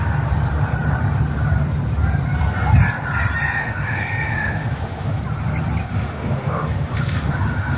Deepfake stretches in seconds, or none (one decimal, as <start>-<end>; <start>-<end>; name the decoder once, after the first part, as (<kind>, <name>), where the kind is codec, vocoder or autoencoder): 3.6-5.2 (autoencoder, DAC-VAE); 5.8-7.8